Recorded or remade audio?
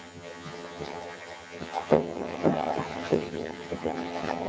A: remade